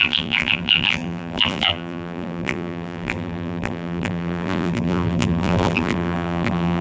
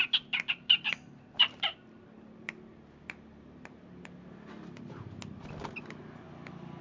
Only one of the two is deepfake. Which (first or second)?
first